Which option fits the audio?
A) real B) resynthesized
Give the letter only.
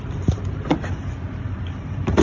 B